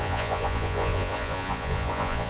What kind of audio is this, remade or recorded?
remade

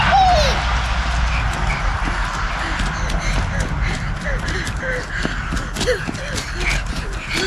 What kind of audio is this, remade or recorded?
recorded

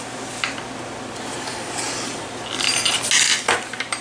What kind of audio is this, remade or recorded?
recorded